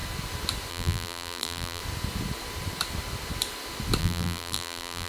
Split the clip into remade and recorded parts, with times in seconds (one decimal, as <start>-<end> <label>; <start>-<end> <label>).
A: 0.0-0.7 recorded; 0.7-1.8 remade; 1.8-4.0 recorded; 4.0-5.1 remade